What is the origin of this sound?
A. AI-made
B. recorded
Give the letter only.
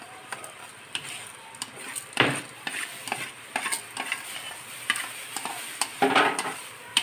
A